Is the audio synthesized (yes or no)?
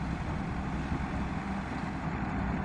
no